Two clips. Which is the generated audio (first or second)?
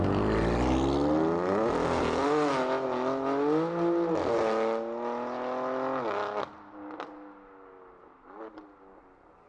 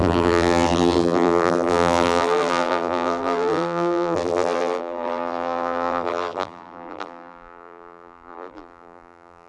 second